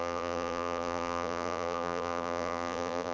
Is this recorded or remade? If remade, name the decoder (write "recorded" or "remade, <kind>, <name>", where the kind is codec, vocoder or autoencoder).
remade, vocoder, BigVGAN v2